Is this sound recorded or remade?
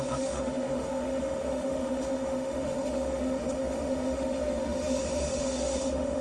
remade